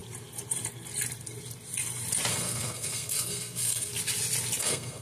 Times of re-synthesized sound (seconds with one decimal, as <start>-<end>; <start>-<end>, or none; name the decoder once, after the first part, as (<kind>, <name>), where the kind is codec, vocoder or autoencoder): 2.3-3.9 (codec, SNAC); 4.6-5.0

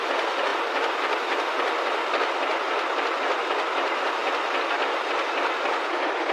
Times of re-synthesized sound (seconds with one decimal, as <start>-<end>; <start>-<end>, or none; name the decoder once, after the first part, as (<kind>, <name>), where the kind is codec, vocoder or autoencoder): none

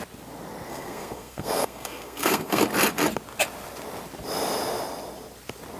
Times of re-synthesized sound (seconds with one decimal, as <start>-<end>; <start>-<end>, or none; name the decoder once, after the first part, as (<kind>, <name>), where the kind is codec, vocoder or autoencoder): 0.7-2.6 (codec, SNAC)

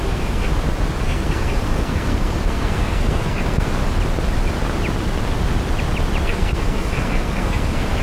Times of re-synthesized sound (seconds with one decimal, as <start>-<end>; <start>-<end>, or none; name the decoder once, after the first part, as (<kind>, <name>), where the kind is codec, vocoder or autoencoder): 0.0-0.5 (codec, SNAC); 1.0-3.8; 6.2-8.0

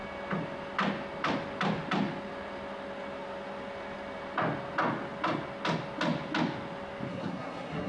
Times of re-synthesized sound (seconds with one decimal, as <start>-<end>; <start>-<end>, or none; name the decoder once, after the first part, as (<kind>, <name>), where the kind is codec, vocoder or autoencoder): 7.1-7.9 (codec, SNAC)

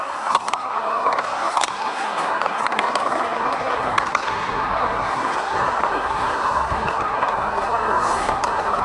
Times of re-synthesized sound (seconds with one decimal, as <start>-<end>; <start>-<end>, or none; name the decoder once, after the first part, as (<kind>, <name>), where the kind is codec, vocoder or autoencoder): 0.0-8.8 (codec, SNAC)